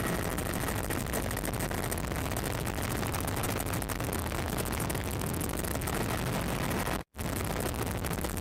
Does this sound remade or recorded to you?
recorded